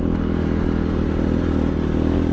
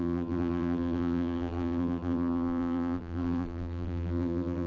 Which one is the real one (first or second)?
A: first